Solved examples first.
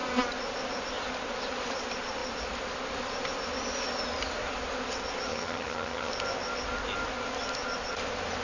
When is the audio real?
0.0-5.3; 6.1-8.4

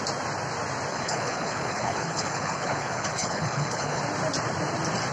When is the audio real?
0.0-0.9; 4.0-5.1

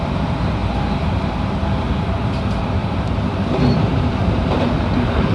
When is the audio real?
0.6-2.2; 2.8-3.8

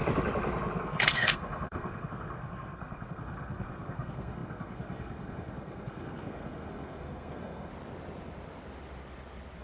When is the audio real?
0.0-0.8; 7.7-9.6

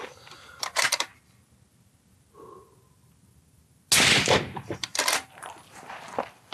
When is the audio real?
1.1-4.1

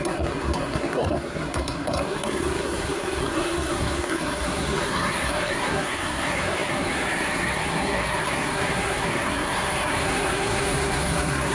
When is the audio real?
none

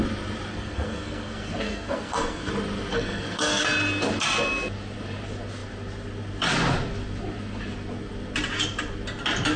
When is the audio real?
0.0-0.5; 2.5-2.9; 3.6-9.6